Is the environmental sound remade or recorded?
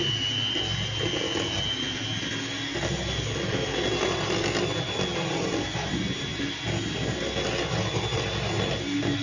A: recorded